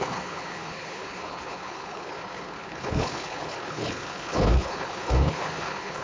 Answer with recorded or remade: remade